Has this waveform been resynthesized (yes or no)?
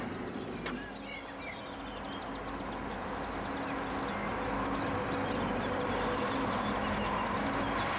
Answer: no